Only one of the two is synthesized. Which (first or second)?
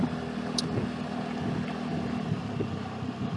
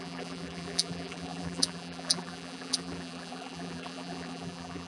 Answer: second